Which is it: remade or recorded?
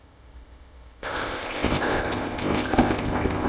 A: remade